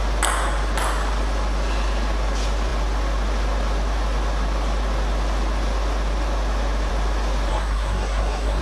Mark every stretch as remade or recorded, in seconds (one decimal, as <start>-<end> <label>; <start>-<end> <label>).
0.0-7.5 recorded; 7.5-8.6 remade